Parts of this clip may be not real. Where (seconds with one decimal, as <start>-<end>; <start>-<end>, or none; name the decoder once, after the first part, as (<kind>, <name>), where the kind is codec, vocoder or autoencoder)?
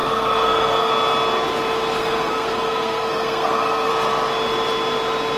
0.0-0.9 (codec, SNAC); 2.0-3.9